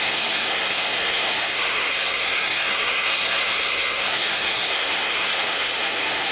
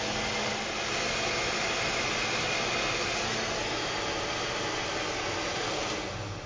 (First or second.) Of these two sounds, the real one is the second